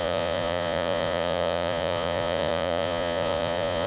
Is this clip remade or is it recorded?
remade